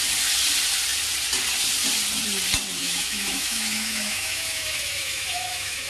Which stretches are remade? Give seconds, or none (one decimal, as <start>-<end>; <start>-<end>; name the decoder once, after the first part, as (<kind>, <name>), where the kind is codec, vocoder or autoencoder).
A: 2.8-5.9 (autoencoder, DAC-VAE)

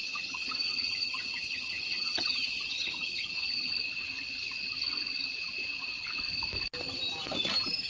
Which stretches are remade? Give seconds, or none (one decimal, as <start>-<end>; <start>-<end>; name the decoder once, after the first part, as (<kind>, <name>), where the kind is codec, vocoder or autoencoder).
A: 0.0-3.7 (vocoder, HiFi-GAN)